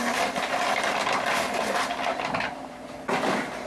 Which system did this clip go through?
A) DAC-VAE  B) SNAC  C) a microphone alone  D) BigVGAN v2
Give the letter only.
C